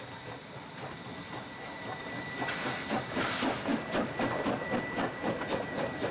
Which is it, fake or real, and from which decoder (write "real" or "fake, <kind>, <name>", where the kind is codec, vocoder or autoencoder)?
fake, vocoder, BigVGAN v2